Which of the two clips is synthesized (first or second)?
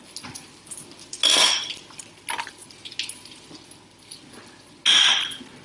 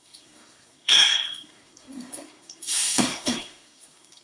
second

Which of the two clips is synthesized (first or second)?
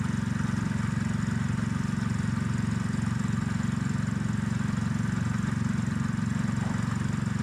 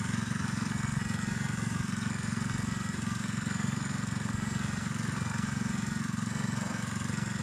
second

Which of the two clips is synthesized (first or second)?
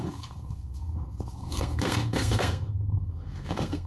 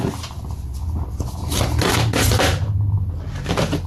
first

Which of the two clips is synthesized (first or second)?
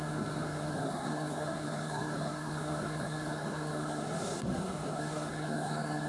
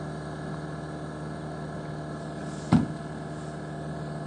first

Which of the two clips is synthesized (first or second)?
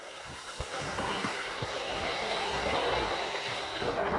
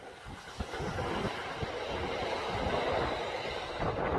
first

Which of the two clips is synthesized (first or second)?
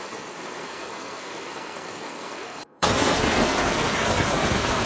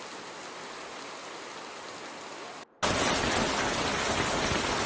first